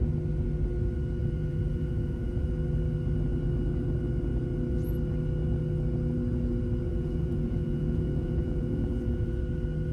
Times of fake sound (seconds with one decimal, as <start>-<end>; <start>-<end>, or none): 1.2-2.5; 6.9-9.4